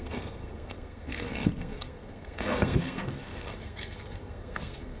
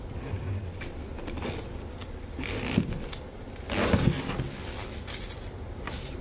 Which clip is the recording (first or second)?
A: second